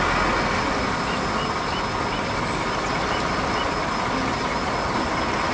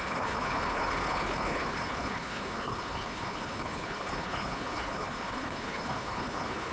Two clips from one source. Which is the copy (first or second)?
second